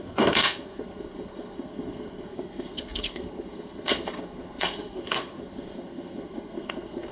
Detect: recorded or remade remade